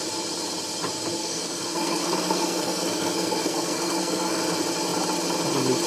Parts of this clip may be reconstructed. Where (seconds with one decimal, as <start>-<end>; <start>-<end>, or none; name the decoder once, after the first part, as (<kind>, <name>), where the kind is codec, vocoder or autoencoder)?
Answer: 1.2-4.4 (codec, SNAC)